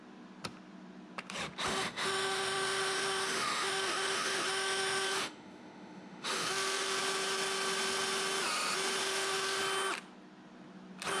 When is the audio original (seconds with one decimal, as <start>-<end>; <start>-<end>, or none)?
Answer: 0.0-1.7; 7.0-9.0; 9.6-11.2